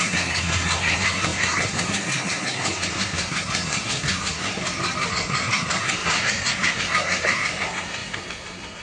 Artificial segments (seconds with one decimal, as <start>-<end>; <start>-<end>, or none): 0.0-4.6; 5.1-8.8